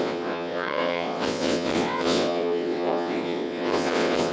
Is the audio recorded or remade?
remade